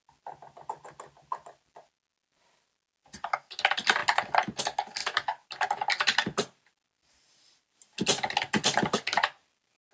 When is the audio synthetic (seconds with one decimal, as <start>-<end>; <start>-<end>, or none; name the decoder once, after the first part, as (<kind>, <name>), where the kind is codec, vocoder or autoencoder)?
none